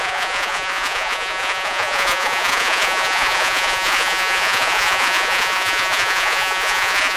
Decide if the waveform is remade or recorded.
remade